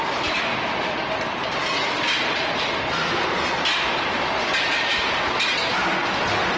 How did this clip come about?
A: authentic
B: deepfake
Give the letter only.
A